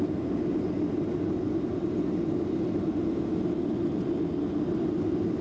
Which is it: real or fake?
real